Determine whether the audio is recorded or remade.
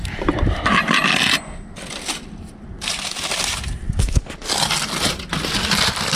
recorded